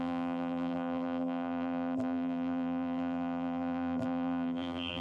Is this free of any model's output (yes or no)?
no